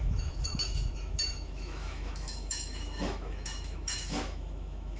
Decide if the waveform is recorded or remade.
remade